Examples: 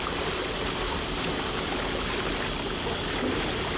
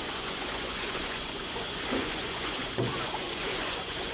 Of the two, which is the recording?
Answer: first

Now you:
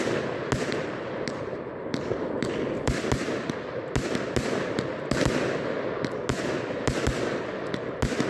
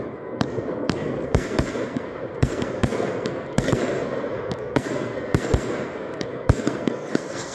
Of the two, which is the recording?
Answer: first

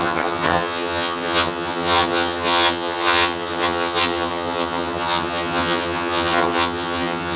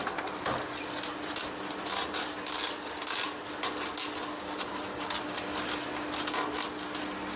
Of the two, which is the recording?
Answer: second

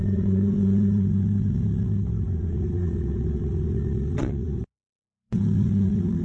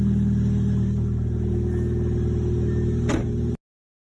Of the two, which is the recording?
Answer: second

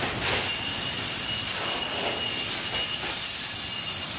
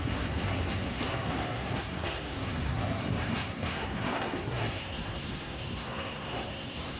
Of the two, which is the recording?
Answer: first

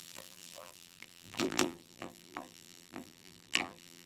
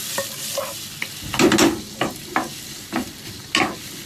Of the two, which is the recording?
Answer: second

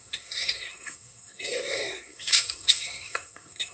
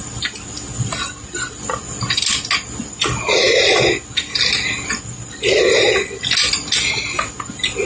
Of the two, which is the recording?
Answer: second